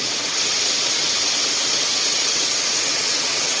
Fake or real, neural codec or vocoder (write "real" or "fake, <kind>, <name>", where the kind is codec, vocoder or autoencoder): fake, vocoder, WaveNeXt